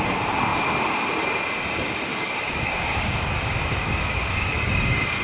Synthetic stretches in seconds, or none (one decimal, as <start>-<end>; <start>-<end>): 2.1-5.2

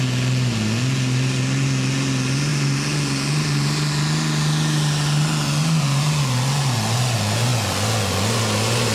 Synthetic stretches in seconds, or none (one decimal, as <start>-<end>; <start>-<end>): none